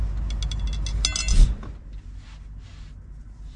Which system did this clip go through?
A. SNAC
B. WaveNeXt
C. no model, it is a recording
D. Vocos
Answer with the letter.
C